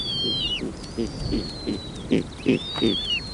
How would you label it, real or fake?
real